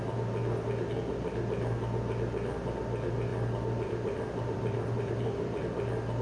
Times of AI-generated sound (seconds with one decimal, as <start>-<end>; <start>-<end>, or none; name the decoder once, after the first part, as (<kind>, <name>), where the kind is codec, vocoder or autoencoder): 3.3-5.6 (vocoder, BigVGAN v2)